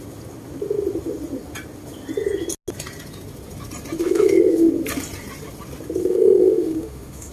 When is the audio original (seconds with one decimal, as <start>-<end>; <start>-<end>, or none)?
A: 0.0-4.0; 4.7-6.0